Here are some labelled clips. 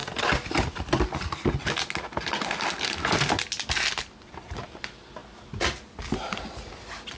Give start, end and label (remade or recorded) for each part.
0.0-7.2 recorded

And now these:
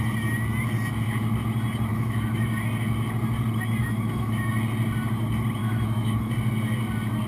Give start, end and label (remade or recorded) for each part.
0.0-1.9 recorded; 1.9-2.5 remade; 2.5-3.8 recorded; 3.8-4.5 remade; 4.5-5.6 recorded; 5.6-6.3 remade; 6.3-7.3 recorded

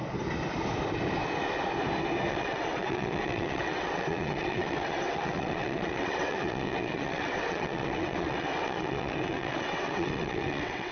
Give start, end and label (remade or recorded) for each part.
0.0-2.3 recorded; 2.3-10.9 remade

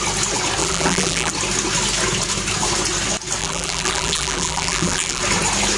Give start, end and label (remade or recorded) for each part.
0.0-0.6 recorded; 0.6-1.3 remade; 1.3-3.4 recorded; 3.4-5.2 remade; 5.2-5.8 recorded